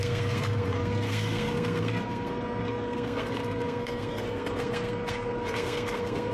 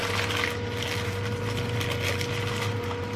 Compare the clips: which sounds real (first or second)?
second